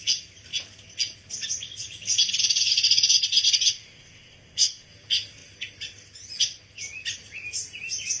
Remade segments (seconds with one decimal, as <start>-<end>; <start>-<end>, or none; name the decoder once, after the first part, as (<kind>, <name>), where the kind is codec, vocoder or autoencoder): 3.7-4.9 (codec, ZipCodec)